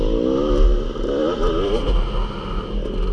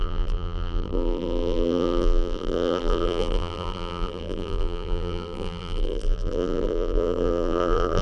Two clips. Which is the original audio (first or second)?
first